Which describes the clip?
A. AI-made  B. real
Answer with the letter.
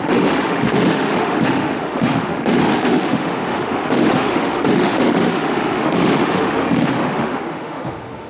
A